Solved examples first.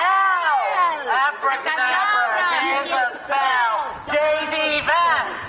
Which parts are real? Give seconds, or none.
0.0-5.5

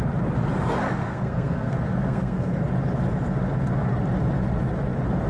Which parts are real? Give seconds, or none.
0.0-1.0; 2.6-5.3

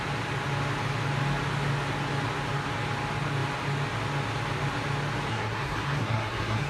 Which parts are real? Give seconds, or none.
0.0-5.3

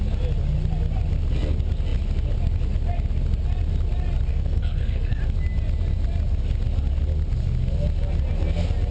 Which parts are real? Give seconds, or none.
0.0-4.3; 5.2-8.9

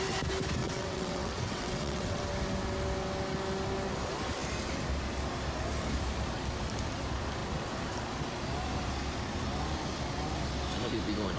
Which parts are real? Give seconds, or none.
0.0-0.6; 2.2-11.4

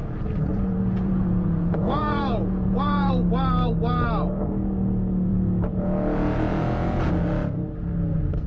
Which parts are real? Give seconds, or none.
3.1-5.3; 7.1-8.5

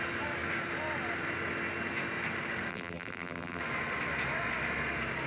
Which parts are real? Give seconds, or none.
0.0-2.7; 3.6-5.3